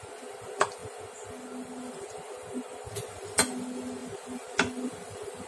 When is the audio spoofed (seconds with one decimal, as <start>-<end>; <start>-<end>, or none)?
none